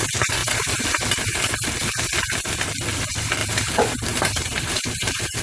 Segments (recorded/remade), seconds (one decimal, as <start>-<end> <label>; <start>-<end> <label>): 0.0-0.4 recorded; 0.4-1.4 remade; 1.4-3.4 recorded; 3.4-5.4 remade

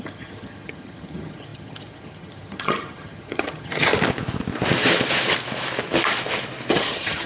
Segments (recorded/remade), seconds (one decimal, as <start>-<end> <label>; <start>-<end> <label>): 0.0-3.9 remade; 3.9-6.7 recorded; 6.7-7.3 remade

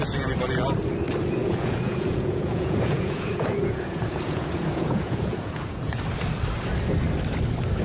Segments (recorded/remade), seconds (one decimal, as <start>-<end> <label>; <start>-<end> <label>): 0.0-1.4 recorded; 1.4-6.0 remade; 6.0-7.8 recorded

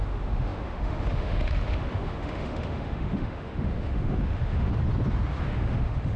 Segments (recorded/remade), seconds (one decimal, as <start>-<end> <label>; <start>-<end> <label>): 0.0-4.8 remade; 4.8-5.4 recorded; 5.4-6.2 remade

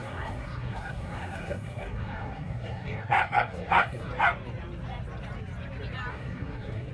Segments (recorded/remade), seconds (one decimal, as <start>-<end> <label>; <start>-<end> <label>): 0.0-4.1 remade; 4.1-6.1 recorded; 6.1-6.9 remade